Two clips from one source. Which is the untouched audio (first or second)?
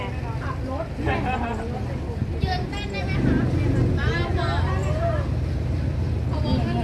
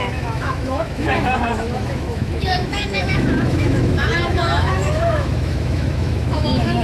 first